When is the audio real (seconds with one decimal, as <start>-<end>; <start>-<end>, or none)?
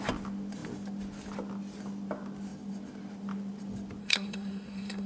0.0-4.0